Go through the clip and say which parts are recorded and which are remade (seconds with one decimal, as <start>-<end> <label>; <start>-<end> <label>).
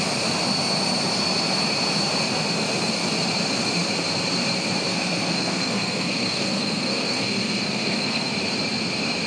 0.0-4.9 recorded; 4.9-8.3 remade; 8.3-9.3 recorded